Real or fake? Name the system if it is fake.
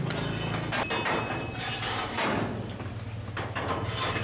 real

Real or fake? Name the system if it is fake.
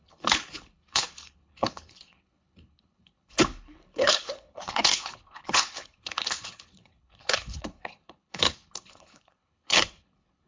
fake, codec, HILCodec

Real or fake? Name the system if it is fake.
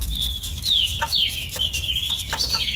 fake, codec, DAC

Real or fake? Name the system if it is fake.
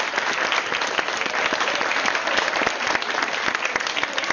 real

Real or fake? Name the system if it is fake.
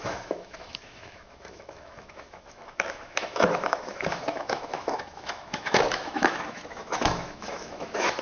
fake, autoencoder, DAC-VAE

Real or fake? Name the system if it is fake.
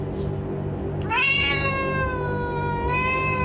real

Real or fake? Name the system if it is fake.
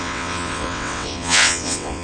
fake, vocoder, WaveNeXt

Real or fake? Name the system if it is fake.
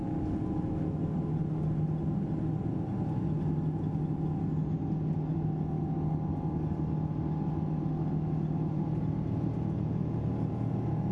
real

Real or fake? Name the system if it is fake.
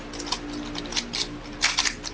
real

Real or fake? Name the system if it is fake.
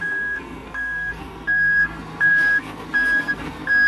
fake, codec, SNAC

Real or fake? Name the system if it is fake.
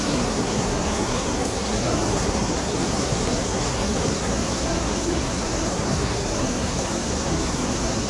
fake, codec, SNAC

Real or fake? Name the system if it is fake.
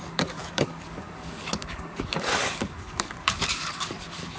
fake, codec, DAC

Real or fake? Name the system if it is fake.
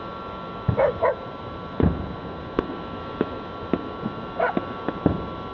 real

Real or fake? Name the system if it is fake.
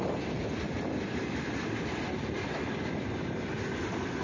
real